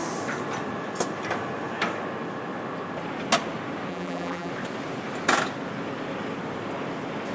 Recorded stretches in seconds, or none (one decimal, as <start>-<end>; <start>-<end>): 0.0-3.9; 4.5-7.3